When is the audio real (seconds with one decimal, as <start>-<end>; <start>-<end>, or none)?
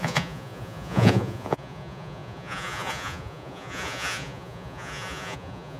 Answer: none